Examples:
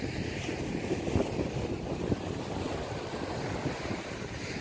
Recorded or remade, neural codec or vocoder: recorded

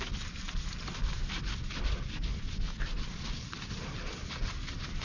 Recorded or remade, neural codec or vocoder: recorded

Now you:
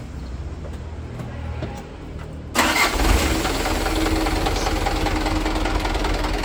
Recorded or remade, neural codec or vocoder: recorded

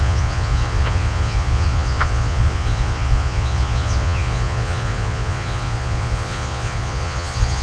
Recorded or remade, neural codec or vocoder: remade, vocoder, Vocos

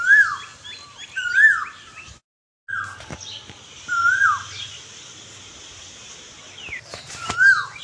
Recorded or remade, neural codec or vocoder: recorded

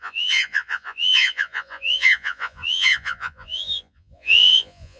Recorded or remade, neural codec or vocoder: remade, vocoder, Vocos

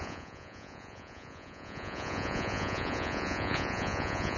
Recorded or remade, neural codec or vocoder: remade, vocoder, Vocos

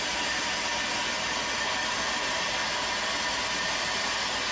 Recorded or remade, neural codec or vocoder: recorded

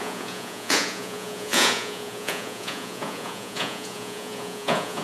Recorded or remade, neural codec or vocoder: remade, vocoder, Vocos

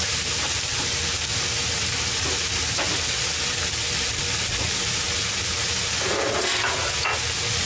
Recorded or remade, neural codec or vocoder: recorded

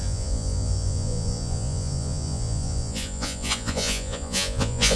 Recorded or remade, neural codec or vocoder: remade, vocoder, Vocos